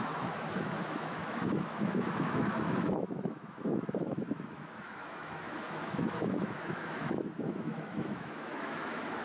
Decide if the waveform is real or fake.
fake